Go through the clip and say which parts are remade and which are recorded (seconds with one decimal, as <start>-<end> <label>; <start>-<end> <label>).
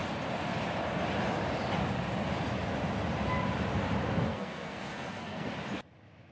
0.0-4.3 recorded; 4.3-5.5 remade; 5.5-6.3 recorded